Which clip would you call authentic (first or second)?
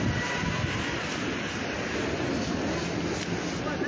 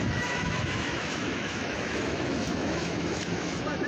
first